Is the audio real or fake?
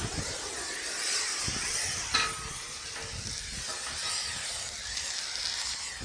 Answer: real